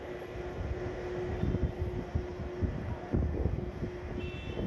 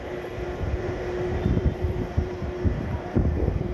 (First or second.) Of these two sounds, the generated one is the second